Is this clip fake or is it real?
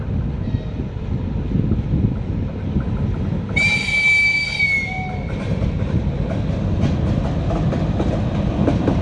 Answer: real